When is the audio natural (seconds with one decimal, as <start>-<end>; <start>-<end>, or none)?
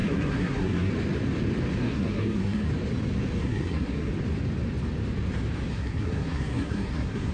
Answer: 0.9-1.8; 2.7-3.4; 4.1-5.7